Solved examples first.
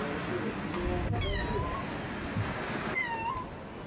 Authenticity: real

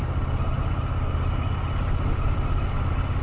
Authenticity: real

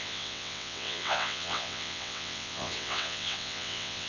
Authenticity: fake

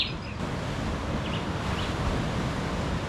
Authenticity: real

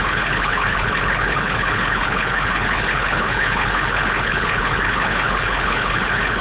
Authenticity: fake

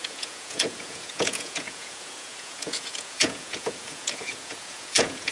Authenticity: fake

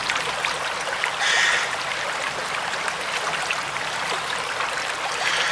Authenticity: real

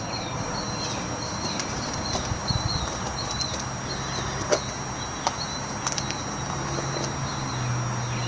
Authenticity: real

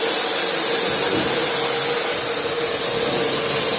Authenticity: real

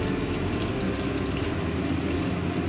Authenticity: real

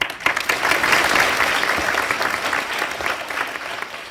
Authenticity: real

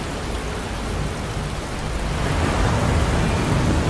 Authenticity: real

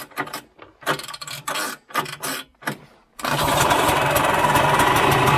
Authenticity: real